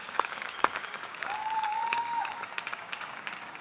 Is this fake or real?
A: fake